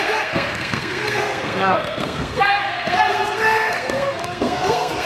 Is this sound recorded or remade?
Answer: remade